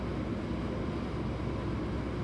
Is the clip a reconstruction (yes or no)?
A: no